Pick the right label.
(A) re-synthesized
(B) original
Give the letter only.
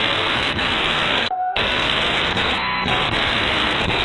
A